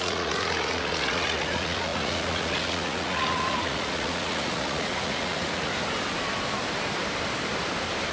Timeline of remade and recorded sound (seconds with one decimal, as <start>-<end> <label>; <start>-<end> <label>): 0.0-5.7 remade; 5.7-8.1 recorded